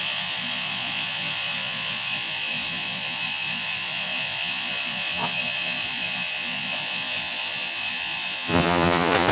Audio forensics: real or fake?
fake